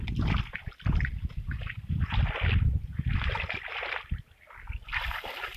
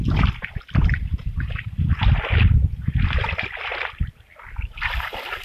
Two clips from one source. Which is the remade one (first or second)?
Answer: second